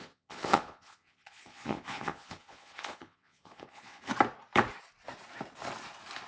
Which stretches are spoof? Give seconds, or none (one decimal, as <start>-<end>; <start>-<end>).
0.0-4.1